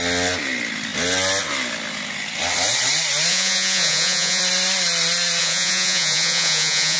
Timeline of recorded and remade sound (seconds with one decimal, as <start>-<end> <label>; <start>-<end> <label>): 0.0-3.3 recorded; 3.3-4.4 remade; 4.4-5.4 recorded; 5.4-7.0 remade